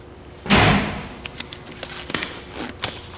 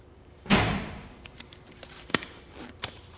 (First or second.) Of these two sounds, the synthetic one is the second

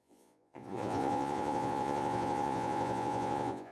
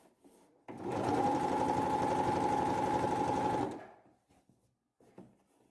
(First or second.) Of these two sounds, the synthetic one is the first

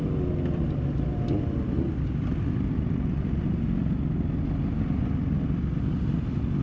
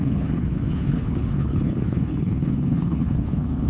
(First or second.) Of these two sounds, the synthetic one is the second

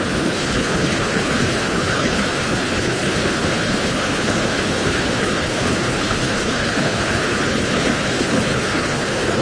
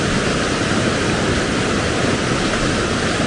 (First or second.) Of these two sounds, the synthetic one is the first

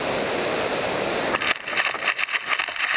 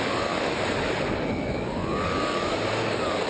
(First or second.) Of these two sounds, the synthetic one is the second